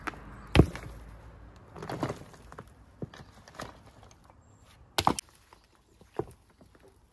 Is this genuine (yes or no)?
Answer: yes